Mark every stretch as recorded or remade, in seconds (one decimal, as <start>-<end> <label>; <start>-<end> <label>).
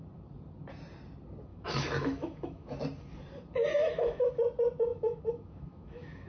0.0-1.5 recorded; 1.5-2.8 remade; 2.8-3.7 recorded; 3.7-4.3 remade; 4.3-4.9 recorded; 4.9-6.3 remade